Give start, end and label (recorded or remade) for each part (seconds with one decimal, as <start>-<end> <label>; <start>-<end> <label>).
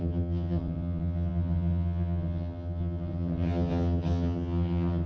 0.0-5.1 remade